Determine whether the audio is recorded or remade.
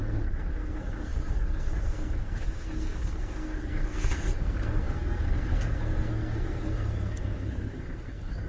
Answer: remade